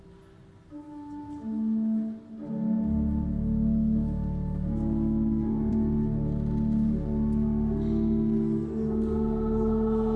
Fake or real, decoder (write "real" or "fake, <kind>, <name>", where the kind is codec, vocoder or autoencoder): real